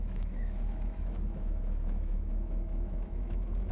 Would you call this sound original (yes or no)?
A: no